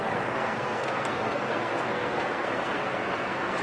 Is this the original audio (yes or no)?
no